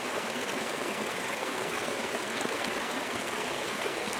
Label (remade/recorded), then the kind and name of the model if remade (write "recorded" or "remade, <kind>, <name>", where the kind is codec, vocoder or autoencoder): remade, codec, SNAC